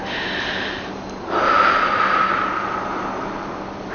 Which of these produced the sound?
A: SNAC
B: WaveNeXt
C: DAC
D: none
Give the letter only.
D